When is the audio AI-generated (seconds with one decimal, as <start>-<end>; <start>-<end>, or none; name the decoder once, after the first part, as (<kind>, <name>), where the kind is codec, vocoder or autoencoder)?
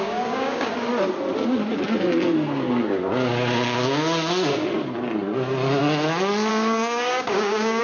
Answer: 0.0-0.7 (codec, DAC); 6.5-7.8